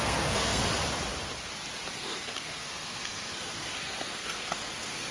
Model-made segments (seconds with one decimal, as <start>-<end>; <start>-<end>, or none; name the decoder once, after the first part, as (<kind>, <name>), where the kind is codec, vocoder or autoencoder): 0.0-0.6 (codec, SNAC); 1.9-5.1